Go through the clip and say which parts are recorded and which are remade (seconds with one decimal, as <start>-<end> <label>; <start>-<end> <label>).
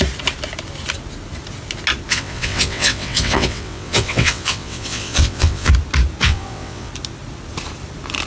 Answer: 0.0-2.1 recorded; 2.1-5.7 remade; 5.7-6.2 recorded; 6.2-6.9 remade; 6.9-8.3 recorded